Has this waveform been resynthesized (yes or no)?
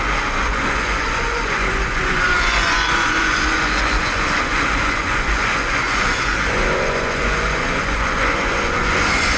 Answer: yes